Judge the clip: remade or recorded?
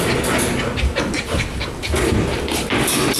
recorded